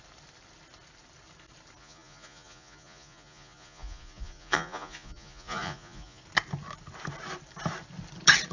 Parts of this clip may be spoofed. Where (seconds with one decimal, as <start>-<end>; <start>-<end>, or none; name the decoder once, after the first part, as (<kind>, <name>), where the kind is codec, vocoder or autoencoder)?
1.8-6.2 (vocoder, Vocos)